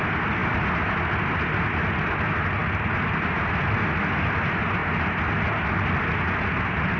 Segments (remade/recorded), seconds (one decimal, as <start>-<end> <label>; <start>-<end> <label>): 0.0-7.0 recorded